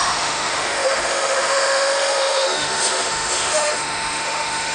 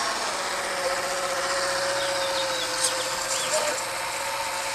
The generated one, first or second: first